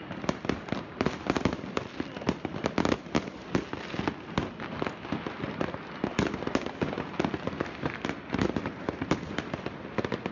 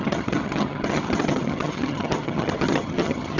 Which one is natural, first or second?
first